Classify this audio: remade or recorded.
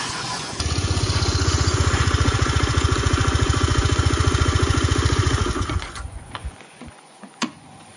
remade